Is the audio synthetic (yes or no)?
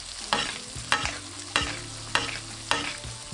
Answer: no